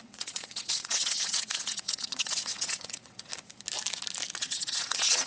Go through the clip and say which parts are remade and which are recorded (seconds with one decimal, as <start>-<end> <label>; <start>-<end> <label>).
0.0-3.3 remade; 3.3-4.4 recorded; 4.4-5.3 remade